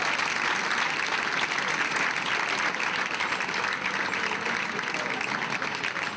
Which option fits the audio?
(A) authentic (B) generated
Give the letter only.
A